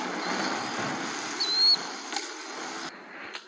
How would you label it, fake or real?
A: real